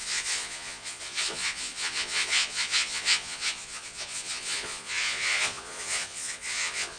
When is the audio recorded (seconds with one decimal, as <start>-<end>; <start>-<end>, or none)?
none